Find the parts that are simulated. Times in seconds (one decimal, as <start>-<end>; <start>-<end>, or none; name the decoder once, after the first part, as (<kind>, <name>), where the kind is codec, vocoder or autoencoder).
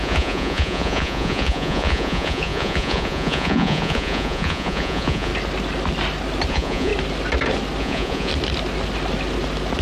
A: 0.0-5.3 (vocoder, Vocos); 6.5-6.9; 7.8-8.3